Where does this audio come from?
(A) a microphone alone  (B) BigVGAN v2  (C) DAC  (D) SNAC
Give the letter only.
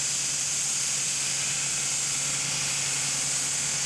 A